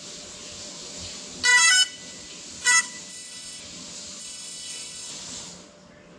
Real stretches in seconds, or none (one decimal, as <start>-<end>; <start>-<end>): 0.0-3.1; 3.6-4.2; 5.1-6.2